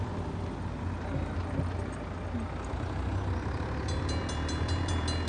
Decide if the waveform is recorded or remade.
recorded